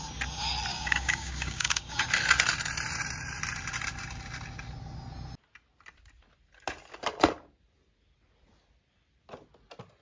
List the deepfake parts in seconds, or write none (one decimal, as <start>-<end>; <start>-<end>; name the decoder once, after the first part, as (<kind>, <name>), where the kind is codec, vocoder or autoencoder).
0.7-2.0 (codec, DAC)